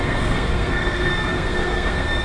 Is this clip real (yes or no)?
no